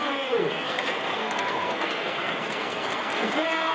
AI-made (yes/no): yes